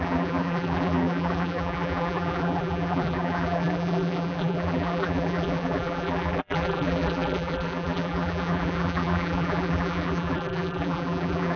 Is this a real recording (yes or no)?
no